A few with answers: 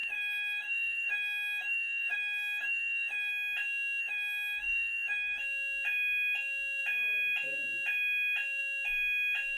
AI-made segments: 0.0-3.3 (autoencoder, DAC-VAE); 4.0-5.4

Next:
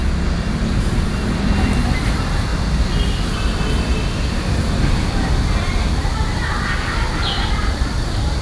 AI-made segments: 0.5-2.5 (vocoder, BigVGAN v2); 7.5-8.4